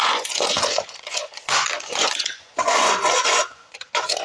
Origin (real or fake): fake